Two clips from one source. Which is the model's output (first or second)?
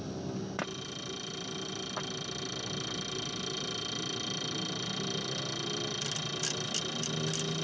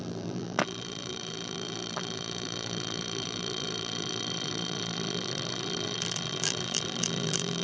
second